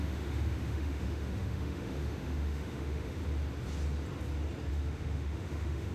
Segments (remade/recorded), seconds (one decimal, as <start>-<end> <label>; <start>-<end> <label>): 0.0-3.2 remade; 3.2-4.7 recorded; 4.7-5.9 remade